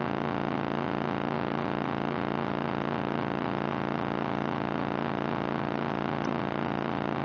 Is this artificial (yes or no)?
yes